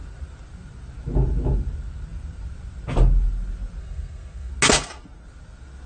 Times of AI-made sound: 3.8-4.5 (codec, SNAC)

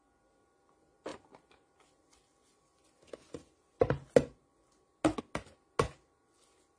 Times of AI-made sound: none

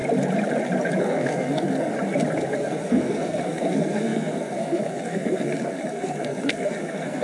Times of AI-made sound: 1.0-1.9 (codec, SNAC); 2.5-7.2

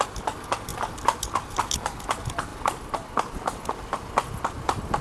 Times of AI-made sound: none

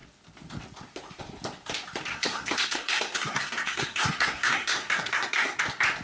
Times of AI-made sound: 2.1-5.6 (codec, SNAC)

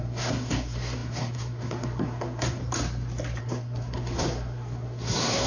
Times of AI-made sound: 0.0-2.6 (codec, SNAC); 3.4-5.5

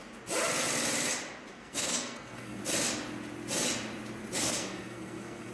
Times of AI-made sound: 1.5-2.6 (codec, SNAC); 4.4-5.5

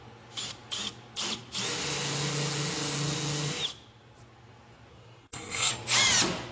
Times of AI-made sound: 4.9-5.7 (codec, SNAC)